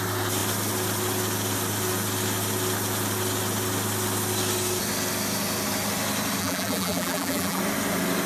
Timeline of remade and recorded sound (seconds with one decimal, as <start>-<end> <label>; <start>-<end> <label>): 0.0-6.4 recorded; 6.4-7.6 remade; 7.6-8.3 recorded